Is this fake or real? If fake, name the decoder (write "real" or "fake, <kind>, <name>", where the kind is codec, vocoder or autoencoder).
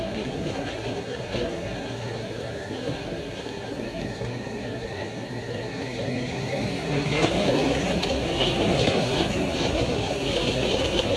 fake, codec, SNAC